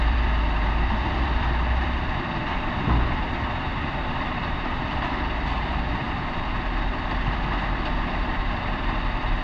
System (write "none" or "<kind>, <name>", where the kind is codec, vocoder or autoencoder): vocoder, BigVGAN v2